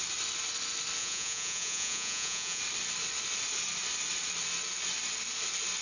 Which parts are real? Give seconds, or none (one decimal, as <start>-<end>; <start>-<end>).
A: 0.0-1.0; 2.6-5.8